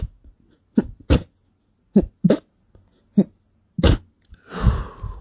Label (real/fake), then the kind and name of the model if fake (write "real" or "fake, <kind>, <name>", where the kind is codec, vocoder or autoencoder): real